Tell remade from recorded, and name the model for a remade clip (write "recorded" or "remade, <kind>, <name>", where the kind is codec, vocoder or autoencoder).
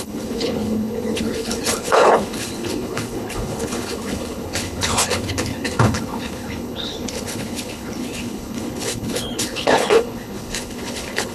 remade, codec, HILCodec